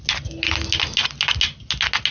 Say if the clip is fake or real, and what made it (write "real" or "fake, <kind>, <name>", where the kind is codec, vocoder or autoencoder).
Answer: real